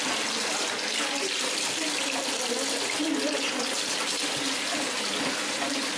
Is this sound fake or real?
real